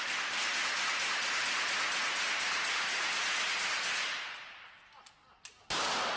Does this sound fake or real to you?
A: real